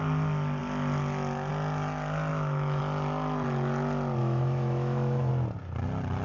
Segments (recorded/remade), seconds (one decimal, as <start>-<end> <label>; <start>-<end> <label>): 0.0-2.3 recorded; 2.3-2.8 remade; 2.8-4.2 recorded; 4.2-5.3 remade; 5.3-6.2 recorded